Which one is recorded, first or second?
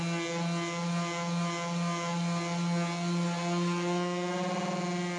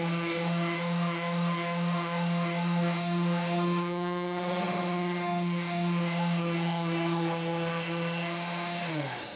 first